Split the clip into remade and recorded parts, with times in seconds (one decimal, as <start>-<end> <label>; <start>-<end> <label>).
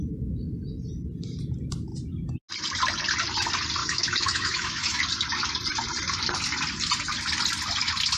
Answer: 0.0-3.8 recorded; 3.8-5.0 remade; 5.0-8.2 recorded